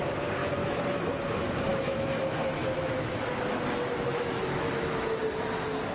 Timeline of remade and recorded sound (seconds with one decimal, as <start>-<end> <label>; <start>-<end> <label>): 0.0-0.4 recorded; 0.4-1.1 remade; 1.1-1.7 recorded; 1.7-5.2 remade; 5.2-5.9 recorded

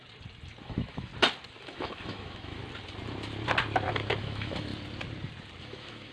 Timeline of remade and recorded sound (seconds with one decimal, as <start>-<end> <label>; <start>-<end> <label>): 0.0-0.6 recorded; 0.6-1.1 remade; 1.1-1.6 recorded; 1.6-2.6 remade; 2.6-4.2 recorded; 4.2-4.7 remade; 4.7-5.6 recorded; 5.6-6.1 remade

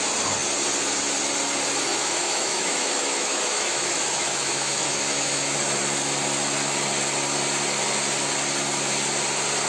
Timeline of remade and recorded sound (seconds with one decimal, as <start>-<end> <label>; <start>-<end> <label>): 0.0-1.9 recorded; 1.9-5.6 remade; 5.6-9.7 recorded

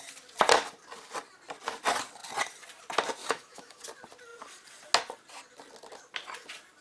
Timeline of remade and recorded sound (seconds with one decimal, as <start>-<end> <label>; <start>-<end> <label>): 0.0-3.2 recorded; 3.2-3.8 remade; 3.8-6.8 recorded